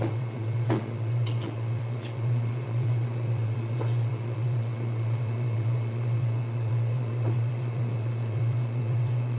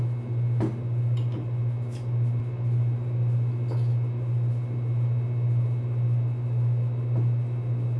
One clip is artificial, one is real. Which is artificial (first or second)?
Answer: first